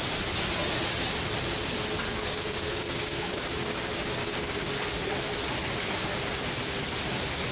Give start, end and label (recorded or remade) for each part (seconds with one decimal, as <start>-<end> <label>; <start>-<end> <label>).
0.0-2.2 recorded; 2.2-4.7 remade; 4.7-7.5 recorded